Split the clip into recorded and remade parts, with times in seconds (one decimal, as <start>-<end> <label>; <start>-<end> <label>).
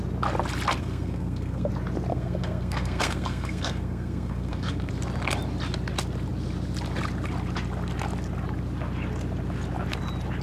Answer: 0.0-0.8 recorded; 0.8-1.7 remade; 1.7-2.1 recorded; 2.1-4.9 remade; 4.9-10.4 recorded